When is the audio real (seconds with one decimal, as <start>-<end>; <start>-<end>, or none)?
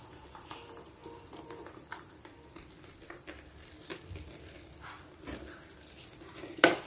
0.0-1.0; 5.1-6.9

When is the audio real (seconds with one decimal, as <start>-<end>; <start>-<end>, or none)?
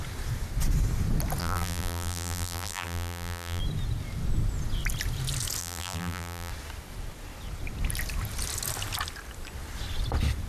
0.0-1.4; 3.6-5.6; 6.5-10.5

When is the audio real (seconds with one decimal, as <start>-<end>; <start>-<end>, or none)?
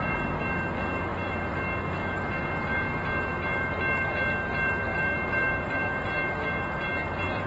0.0-7.5